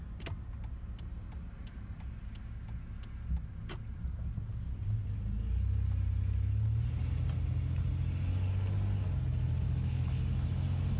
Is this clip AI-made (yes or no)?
no